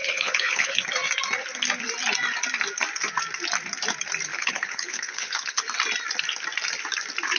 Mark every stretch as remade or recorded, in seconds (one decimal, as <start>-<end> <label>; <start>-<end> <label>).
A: 0.0-0.8 remade; 0.8-4.3 recorded; 4.3-5.6 remade; 5.6-7.4 recorded